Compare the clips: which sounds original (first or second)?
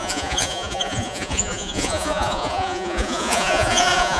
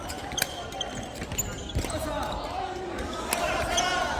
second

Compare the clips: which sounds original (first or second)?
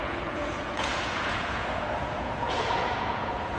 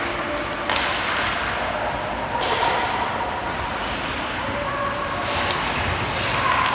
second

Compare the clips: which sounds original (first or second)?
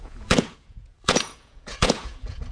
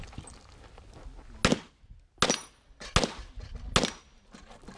second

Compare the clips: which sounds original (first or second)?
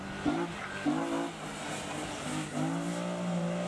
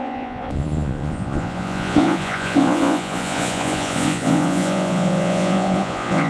first